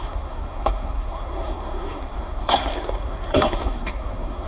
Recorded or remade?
remade